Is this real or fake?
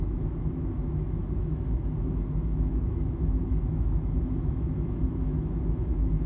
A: fake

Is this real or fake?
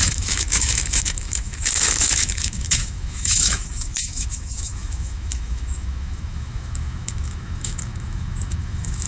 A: fake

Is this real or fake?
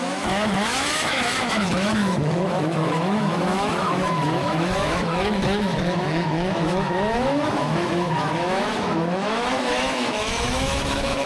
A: fake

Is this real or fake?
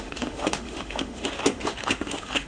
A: fake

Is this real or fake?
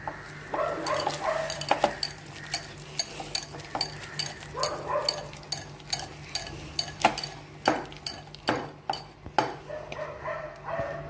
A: real